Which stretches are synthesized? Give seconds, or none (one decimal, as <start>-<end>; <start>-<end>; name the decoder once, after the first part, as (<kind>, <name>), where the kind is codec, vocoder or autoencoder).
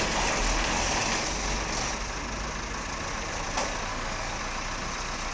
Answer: 3.9-4.4 (codec, DAC)